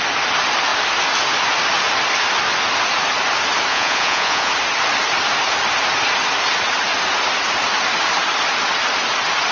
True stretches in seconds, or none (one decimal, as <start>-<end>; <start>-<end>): 0.0-3.7; 4.5-9.5